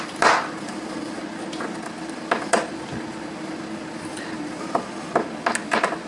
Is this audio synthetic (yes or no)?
no